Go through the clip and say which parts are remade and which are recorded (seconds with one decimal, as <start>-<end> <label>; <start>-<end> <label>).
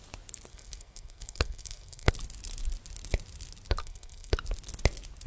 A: 0.0-0.5 recorded; 0.5-2.1 remade; 2.1-3.8 recorded; 3.8-4.3 remade; 4.3-5.3 recorded